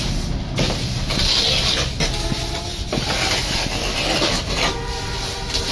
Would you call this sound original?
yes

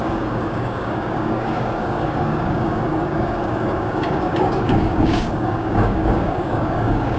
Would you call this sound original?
no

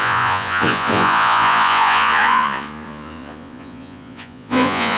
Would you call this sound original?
no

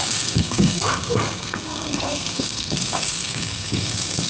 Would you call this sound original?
no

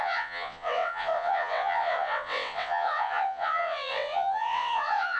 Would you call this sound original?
no